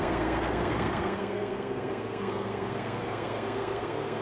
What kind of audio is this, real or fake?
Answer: fake